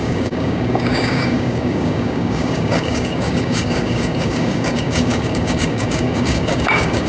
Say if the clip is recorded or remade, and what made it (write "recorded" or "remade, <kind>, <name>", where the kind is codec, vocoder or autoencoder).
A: remade, codec, DAC